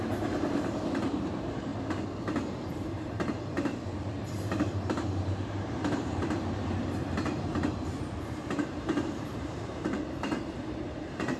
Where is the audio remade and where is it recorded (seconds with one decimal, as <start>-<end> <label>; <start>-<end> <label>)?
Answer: 0.0-1.7 remade; 1.7-2.7 recorded; 2.7-11.4 remade